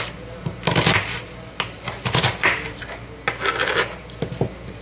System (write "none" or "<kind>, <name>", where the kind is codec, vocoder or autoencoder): none